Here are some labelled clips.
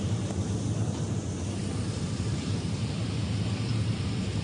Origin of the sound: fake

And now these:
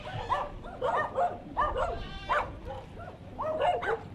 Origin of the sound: real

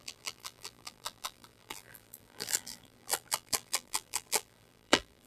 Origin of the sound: fake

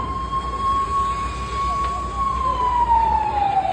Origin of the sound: fake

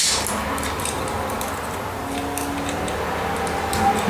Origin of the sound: real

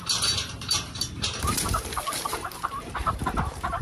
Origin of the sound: fake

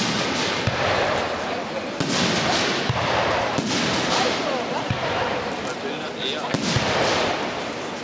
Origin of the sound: real